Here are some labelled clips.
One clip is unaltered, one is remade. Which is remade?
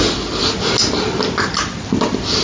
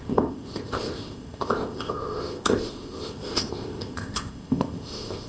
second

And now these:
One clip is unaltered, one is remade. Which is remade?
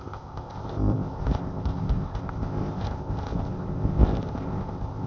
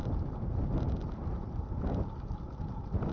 first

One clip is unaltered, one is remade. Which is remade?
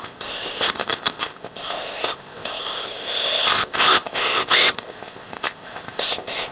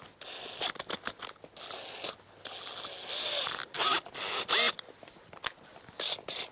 first